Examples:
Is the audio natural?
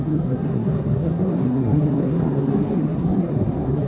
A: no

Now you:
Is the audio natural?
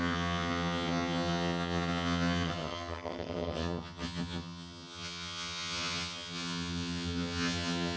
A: no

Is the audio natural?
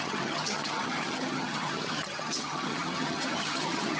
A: no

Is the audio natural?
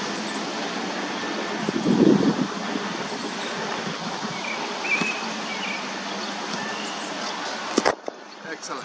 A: yes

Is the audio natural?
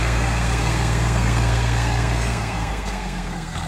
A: no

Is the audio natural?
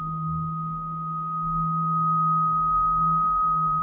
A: no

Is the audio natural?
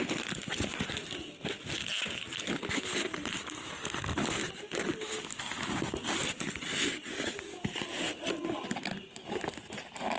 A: yes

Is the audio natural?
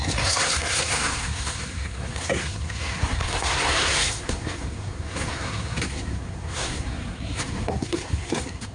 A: no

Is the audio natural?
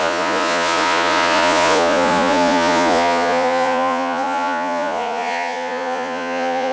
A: no